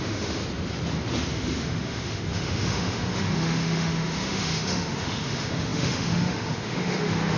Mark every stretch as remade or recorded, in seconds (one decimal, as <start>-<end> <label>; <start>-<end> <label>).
0.0-0.4 remade; 0.4-1.3 recorded; 1.3-7.4 remade